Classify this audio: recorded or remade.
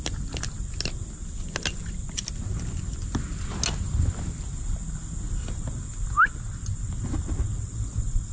recorded